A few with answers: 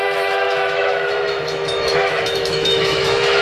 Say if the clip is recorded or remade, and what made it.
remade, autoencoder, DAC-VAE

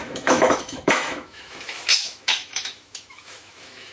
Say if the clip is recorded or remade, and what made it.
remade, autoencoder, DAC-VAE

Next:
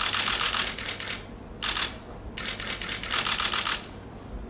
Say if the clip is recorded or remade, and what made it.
recorded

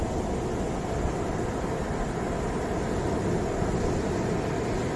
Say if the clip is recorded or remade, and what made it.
recorded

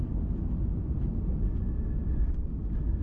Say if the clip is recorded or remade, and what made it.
recorded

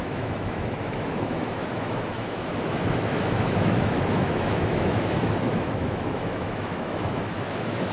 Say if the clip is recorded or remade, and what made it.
remade, autoencoder, DAC-VAE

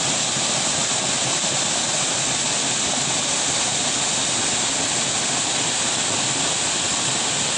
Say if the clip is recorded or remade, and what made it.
recorded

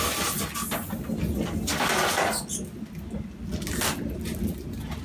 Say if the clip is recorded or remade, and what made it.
recorded